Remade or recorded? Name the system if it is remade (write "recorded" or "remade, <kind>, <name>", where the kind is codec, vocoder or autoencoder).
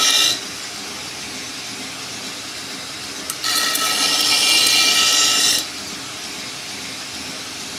recorded